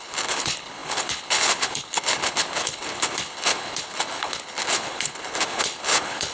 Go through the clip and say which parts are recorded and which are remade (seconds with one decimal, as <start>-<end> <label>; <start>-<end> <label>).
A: 0.0-6.3 remade

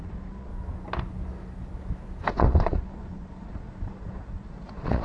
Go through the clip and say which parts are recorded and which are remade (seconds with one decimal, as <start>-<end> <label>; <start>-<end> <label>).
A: 0.0-0.5 remade; 0.5-2.3 recorded; 2.3-5.0 remade